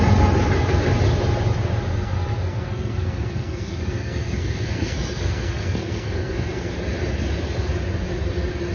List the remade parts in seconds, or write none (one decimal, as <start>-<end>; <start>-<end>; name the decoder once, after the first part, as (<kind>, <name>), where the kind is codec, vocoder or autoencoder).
1.9-6.7 (codec, SNAC)